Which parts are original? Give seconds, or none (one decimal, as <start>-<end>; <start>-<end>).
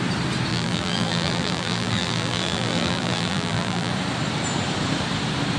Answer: 0.0-0.5; 3.9-5.6